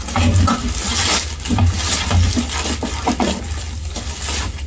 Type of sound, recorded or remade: recorded